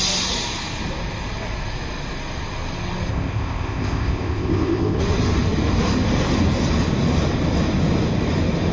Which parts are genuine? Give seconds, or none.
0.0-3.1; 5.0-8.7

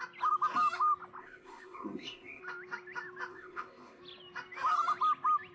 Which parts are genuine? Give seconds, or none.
0.0-1.2; 2.4-3.3; 4.0-5.5

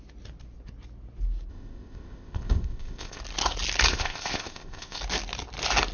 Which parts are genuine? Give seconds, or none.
0.0-1.5; 3.2-3.9; 5.0-5.9